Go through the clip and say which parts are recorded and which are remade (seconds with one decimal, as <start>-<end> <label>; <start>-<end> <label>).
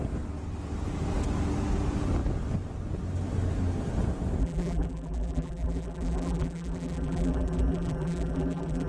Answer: 0.0-4.4 recorded; 4.4-8.9 remade